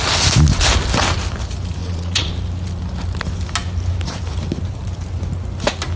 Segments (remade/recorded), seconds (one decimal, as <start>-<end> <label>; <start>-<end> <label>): 0.0-1.8 recorded; 1.8-2.3 remade; 2.3-6.0 recorded

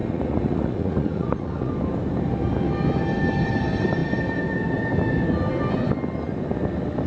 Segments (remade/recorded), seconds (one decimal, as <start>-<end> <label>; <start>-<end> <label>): 0.0-1.7 remade; 1.7-7.1 recorded

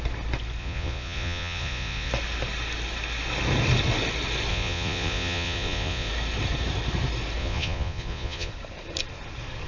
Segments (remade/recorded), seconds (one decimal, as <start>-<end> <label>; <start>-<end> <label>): 0.0-0.6 recorded; 0.6-2.1 remade; 2.1-4.5 recorded; 4.5-6.1 remade; 6.1-7.4 recorded; 7.4-8.5 remade; 8.5-9.7 recorded

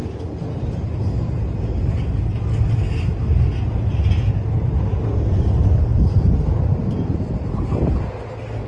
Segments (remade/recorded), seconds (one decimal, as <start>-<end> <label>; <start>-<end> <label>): 0.0-8.7 recorded

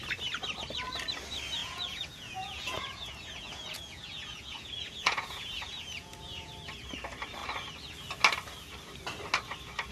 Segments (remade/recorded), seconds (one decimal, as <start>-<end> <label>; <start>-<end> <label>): 0.0-1.6 recorded; 1.6-6.5 remade; 6.5-9.9 recorded

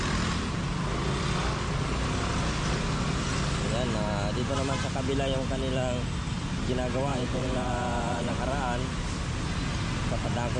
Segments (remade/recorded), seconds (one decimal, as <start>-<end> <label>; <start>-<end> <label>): 0.0-7.1 recorded; 7.1-8.4 remade; 8.4-10.6 recorded

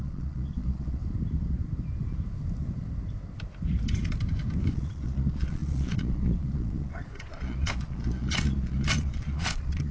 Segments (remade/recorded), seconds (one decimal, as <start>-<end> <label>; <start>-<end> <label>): 0.0-1.0 remade; 1.0-4.7 recorded; 4.7-9.9 remade

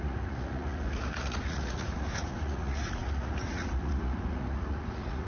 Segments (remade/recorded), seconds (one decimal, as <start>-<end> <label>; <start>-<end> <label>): 0.0-5.3 remade